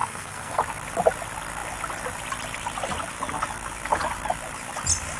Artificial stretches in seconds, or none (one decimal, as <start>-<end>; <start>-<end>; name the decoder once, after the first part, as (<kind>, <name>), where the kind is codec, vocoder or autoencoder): 0.0-0.6 (codec, SNAC)